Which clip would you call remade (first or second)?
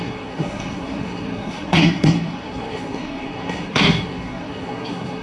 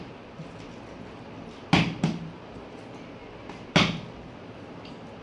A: first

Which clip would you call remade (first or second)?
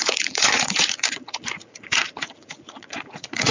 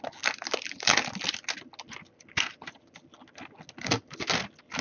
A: first